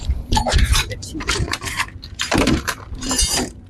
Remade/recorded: remade